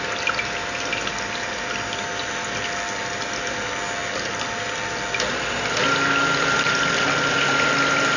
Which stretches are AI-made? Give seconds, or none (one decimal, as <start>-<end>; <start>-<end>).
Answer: none